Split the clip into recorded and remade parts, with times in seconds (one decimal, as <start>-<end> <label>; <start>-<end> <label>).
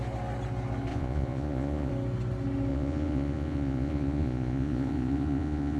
0.0-0.9 recorded; 0.9-1.9 remade; 1.9-2.7 recorded; 2.7-5.8 remade